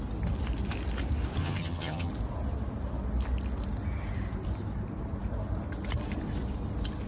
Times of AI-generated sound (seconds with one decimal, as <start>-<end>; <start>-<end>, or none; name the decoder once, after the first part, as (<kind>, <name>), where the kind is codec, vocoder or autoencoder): 1.4-2.1 (vocoder, HiFi-GAN)